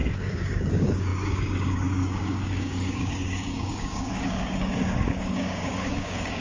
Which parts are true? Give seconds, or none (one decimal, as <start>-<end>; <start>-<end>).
none